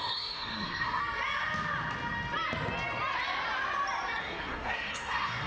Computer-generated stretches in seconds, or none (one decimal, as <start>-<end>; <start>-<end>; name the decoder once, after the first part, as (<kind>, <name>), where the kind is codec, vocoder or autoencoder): 0.0-1.0 (codec, SNAC); 4.2-5.5